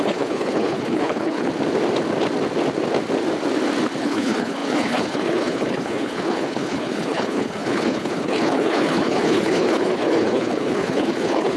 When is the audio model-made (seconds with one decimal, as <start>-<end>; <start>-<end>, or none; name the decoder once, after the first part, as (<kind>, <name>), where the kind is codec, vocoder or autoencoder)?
0.0-1.5 (codec, HILCodec); 4.0-11.6